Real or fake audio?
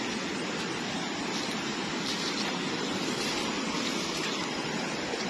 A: real